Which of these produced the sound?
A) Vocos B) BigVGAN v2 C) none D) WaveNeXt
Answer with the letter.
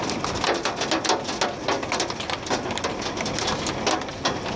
C